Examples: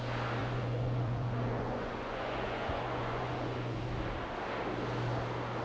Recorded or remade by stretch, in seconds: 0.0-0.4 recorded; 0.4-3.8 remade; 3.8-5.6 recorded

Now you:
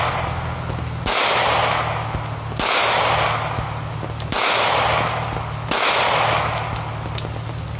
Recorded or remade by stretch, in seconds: 0.0-7.8 recorded

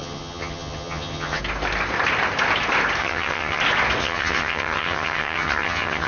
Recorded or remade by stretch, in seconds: 0.0-1.4 remade; 1.4-3.0 recorded; 3.0-3.6 remade; 3.6-4.0 recorded; 4.0-6.1 remade

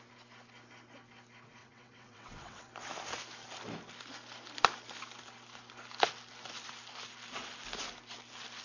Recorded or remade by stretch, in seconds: 0.0-1.6 recorded; 1.6-2.7 remade; 2.7-8.6 recorded

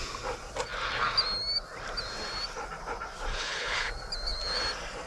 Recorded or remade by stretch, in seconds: 0.0-3.3 recorded; 3.3-3.9 remade; 3.9-5.1 recorded